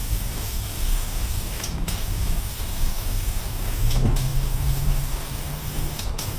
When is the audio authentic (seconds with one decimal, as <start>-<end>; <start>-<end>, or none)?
none